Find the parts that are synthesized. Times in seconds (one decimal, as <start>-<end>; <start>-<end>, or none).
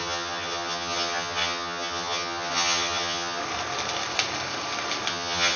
0.0-3.4; 5.1-5.6